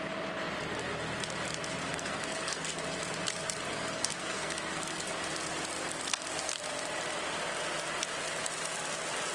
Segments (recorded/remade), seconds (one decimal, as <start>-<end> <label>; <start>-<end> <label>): 0.0-1.9 recorded; 1.9-2.8 remade; 2.8-3.7 recorded; 3.7-5.0 remade; 5.0-9.3 recorded